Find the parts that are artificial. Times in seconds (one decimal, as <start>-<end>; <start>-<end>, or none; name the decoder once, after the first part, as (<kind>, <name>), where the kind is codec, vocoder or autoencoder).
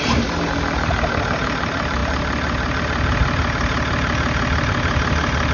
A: none